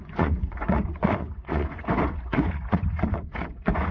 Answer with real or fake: fake